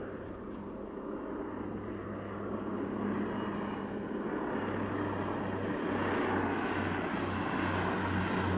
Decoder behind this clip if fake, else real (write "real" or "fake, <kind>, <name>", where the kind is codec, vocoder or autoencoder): real